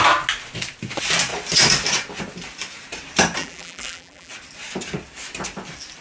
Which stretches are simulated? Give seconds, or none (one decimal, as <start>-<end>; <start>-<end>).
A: 3.4-4.3